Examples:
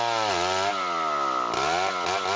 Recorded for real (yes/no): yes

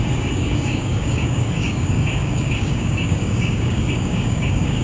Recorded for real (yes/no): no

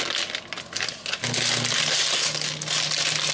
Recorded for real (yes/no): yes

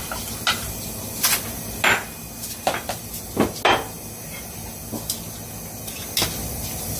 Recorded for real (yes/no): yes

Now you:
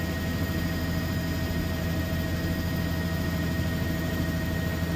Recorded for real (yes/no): yes